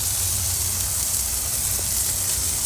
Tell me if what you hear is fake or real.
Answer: fake